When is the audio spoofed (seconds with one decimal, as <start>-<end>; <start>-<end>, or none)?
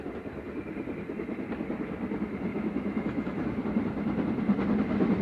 2.5-3.6